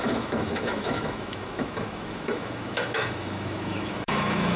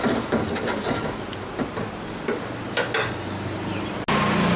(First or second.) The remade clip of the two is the first